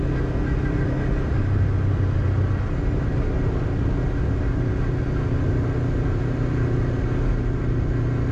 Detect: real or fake real